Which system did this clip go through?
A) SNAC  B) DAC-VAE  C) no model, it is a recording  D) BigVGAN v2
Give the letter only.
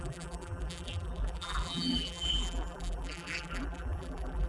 D